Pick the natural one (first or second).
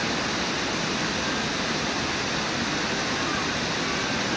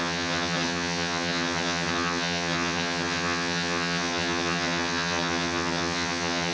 first